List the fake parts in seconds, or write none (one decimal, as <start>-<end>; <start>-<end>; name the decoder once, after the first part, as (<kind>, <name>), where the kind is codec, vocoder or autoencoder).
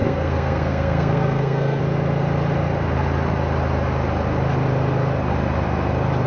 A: 0.0-1.8 (codec, SNAC)